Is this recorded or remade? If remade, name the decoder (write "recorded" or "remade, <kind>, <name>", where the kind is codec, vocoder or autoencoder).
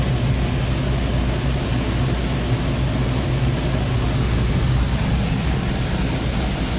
recorded